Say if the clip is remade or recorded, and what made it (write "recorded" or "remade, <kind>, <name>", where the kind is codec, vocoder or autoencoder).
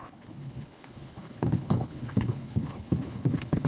remade, codec, HILCodec